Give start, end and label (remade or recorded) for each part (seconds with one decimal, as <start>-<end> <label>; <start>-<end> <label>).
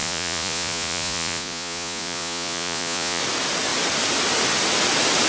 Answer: 0.0-3.2 remade; 3.2-5.3 recorded